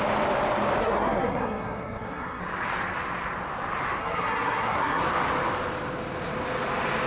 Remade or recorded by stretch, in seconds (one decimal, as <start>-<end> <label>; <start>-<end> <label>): 0.0-0.8 recorded; 0.8-2.4 remade; 2.4-4.0 recorded; 4.0-5.0 remade; 5.0-7.1 recorded